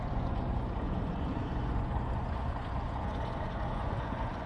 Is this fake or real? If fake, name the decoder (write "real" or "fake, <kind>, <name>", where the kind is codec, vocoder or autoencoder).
fake, vocoder, Vocos